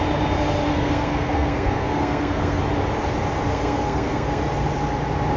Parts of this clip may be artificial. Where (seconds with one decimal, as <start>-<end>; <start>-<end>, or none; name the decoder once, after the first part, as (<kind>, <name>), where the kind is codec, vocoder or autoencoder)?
0.7-2.6 (codec, SNAC); 3.5-4.4